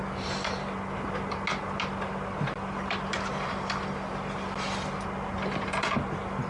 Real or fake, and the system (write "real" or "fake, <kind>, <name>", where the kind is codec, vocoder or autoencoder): real